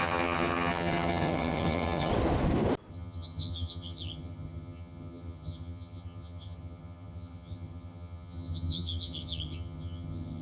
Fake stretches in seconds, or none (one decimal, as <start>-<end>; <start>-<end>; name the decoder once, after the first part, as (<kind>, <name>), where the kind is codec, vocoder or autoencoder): 0.0-2.1 (vocoder, HiFi-GAN); 2.9-10.4